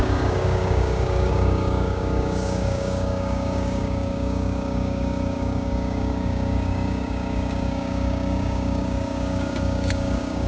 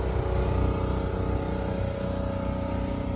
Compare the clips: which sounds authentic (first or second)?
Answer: second